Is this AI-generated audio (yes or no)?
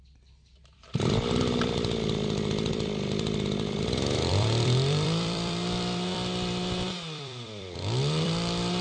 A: yes